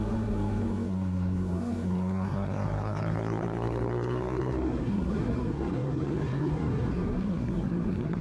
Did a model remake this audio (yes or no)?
yes